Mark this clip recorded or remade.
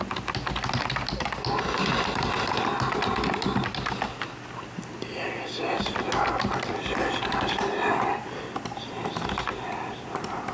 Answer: recorded